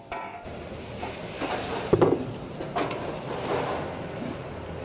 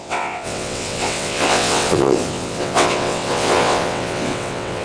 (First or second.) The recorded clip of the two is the first